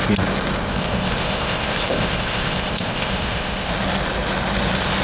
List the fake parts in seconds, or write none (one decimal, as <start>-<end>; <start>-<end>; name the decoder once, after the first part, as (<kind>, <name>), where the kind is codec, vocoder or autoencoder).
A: 0.7-3.7 (codec, ZipCodec)